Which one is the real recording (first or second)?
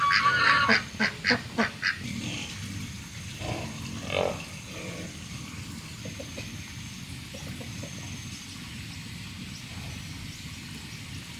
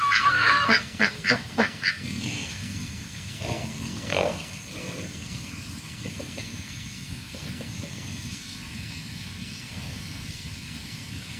first